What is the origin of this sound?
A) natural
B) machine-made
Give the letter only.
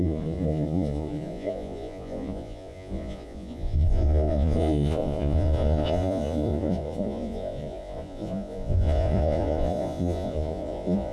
B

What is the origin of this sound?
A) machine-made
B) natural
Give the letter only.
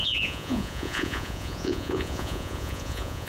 A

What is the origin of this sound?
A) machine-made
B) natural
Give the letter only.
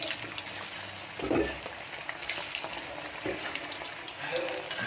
B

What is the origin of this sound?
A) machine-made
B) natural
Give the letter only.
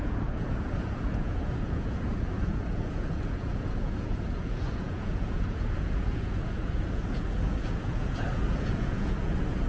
A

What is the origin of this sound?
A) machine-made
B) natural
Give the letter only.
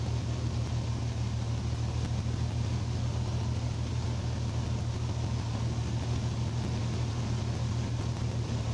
B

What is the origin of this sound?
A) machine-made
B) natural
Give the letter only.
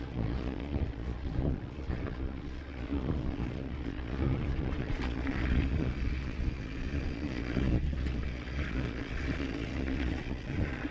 A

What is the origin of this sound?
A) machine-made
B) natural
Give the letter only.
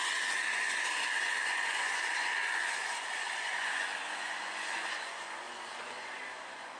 A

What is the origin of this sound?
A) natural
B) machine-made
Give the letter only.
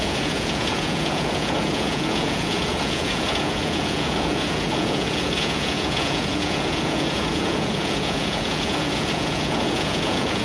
B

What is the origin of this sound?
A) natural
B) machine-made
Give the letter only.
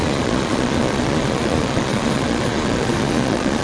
B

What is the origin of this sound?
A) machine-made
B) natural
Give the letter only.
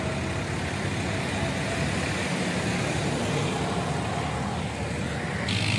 B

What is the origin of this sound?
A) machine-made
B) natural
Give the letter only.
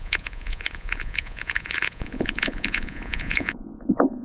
A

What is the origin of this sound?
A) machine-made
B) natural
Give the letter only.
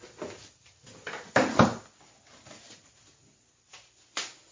B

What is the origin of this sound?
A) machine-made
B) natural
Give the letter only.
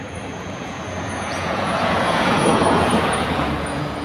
A